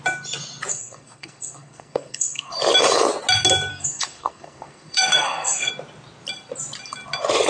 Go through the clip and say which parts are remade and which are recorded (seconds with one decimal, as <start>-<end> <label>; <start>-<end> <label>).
0.0-0.7 recorded; 0.7-2.5 remade; 2.5-3.7 recorded; 3.7-5.7 remade; 5.7-7.5 recorded